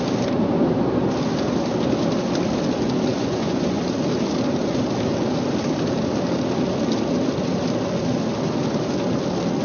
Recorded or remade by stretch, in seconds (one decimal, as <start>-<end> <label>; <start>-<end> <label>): 0.0-3.1 recorded; 3.1-3.8 remade; 3.8-9.6 recorded